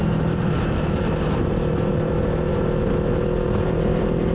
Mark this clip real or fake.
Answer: real